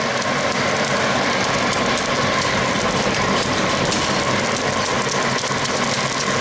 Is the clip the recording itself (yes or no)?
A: yes